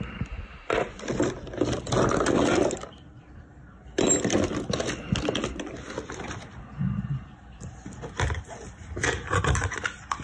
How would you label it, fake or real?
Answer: real